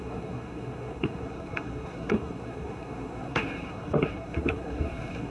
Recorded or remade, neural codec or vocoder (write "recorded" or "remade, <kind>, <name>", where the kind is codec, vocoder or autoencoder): remade, codec, SNAC